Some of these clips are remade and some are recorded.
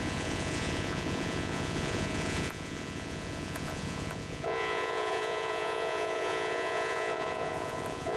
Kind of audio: remade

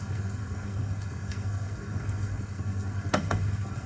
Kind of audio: remade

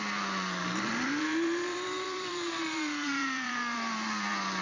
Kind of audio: remade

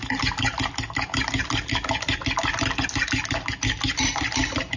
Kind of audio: recorded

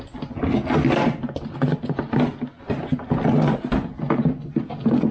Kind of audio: recorded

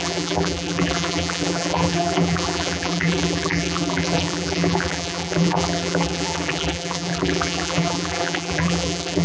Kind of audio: remade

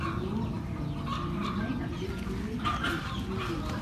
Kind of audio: recorded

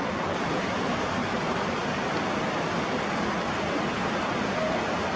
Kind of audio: recorded